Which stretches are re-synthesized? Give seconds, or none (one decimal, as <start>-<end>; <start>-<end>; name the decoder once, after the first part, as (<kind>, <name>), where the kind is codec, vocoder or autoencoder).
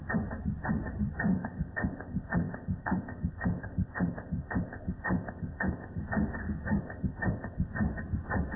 1.3-6.0 (codec, ZipCodec); 6.8-7.7